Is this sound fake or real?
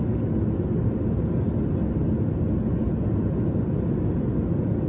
real